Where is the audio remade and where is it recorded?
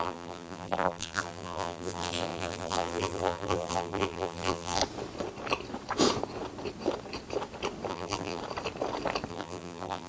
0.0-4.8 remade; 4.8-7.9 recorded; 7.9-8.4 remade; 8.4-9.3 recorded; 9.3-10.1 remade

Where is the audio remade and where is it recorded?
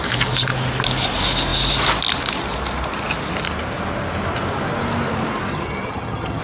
0.0-5.5 recorded; 5.5-6.4 remade